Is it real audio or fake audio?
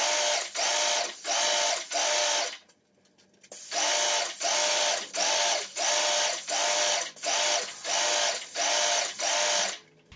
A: real